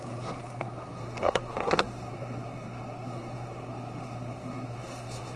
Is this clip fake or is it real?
fake